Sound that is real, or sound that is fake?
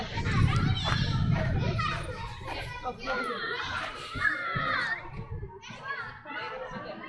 real